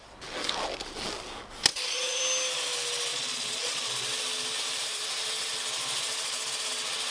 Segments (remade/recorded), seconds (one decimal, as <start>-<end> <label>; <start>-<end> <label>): 0.0-1.7 recorded; 1.7-2.2 remade; 2.2-3.1 recorded; 3.1-3.9 remade; 3.9-7.1 recorded